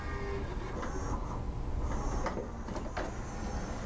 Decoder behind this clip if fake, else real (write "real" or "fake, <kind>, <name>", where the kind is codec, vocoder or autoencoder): real